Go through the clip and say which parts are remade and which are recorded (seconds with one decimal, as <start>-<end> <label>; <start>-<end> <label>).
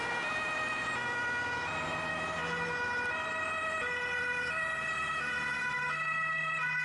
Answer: 0.0-6.8 recorded